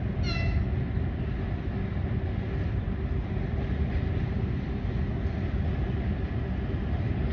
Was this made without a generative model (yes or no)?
yes